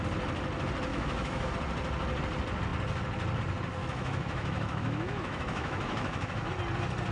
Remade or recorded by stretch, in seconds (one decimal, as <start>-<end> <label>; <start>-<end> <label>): 0.0-0.9 recorded; 0.9-1.5 remade; 1.5-3.8 recorded; 3.8-6.5 remade; 6.5-7.1 recorded